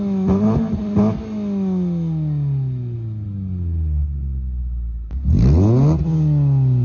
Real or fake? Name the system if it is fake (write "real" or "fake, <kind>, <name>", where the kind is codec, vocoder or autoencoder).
real